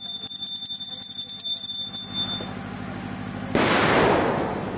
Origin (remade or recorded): recorded